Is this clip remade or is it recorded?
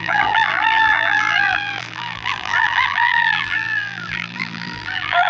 remade